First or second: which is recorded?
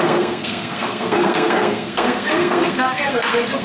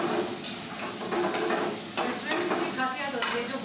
second